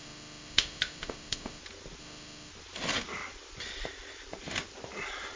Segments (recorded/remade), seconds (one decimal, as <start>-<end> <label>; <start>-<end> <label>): 0.0-1.6 remade; 1.6-2.0 recorded; 2.0-2.5 remade; 2.5-5.4 recorded